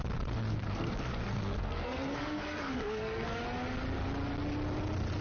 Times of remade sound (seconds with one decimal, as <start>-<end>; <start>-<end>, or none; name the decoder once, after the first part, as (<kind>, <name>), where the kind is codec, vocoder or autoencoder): 0.5-3.4 (codec, SNAC)